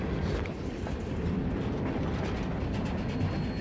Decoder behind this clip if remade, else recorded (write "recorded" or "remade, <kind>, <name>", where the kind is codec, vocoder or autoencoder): recorded